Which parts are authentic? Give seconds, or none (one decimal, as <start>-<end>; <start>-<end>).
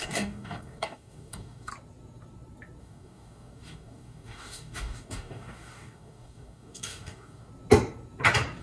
1.7-2.8; 7.5-8.6